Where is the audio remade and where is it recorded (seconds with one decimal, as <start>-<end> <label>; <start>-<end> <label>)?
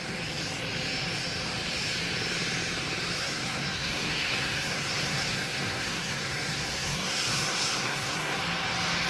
0.0-3.2 recorded; 3.2-8.4 remade; 8.4-9.1 recorded